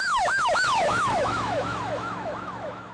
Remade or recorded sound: remade